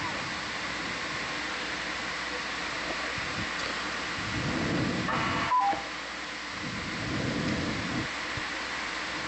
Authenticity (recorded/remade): recorded